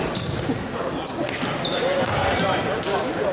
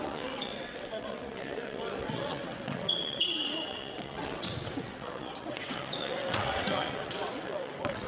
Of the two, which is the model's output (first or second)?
second